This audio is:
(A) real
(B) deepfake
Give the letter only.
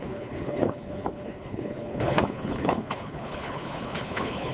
B